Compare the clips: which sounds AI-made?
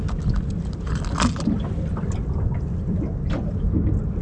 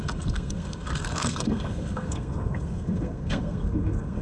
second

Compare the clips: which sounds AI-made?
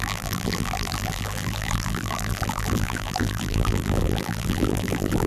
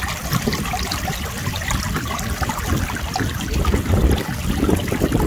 first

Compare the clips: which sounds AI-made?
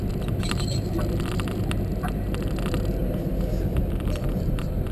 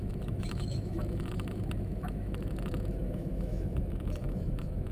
second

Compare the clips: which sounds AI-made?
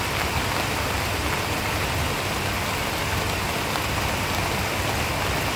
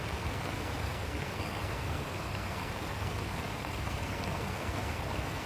second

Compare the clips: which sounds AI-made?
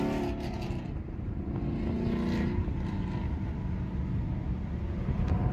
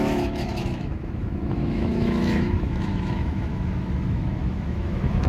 second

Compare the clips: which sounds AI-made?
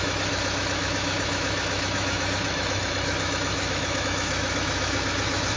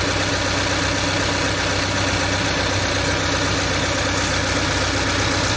first